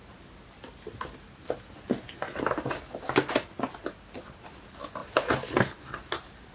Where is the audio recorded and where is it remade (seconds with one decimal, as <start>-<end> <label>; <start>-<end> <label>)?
0.0-6.5 recorded